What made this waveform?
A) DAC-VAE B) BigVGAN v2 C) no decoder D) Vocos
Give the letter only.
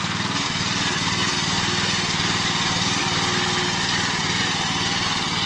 C